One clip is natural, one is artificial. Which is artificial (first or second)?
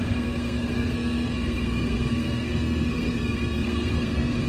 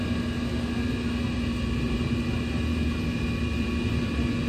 first